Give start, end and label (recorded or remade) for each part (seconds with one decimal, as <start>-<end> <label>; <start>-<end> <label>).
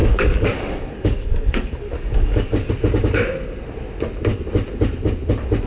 0.0-2.7 remade; 2.7-5.7 recorded